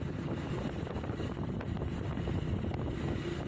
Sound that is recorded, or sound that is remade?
recorded